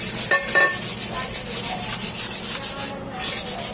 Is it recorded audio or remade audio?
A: recorded